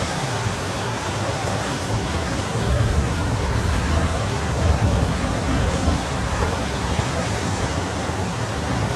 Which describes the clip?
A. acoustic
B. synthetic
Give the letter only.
B